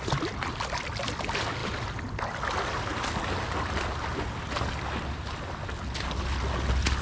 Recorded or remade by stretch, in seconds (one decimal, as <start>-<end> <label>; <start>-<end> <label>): 0.0-7.0 recorded